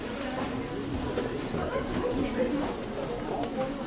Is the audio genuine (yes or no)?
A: yes